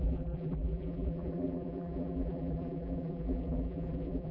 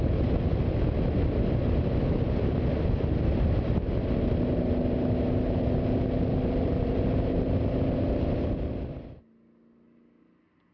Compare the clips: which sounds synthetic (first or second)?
first